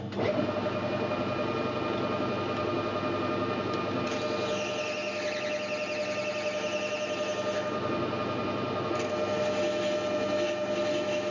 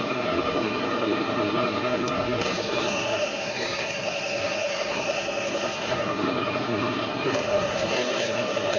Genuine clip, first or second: first